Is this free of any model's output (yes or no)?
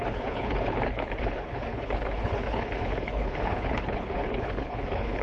no